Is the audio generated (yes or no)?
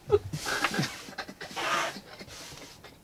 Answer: no